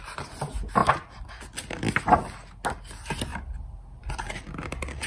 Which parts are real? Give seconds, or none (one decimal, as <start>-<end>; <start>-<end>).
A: 0.0-3.3; 4.1-5.1